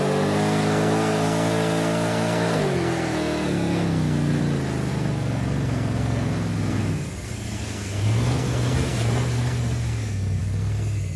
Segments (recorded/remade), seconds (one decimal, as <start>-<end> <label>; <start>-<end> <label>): 0.0-4.4 remade; 4.4-4.9 recorded; 4.9-11.2 remade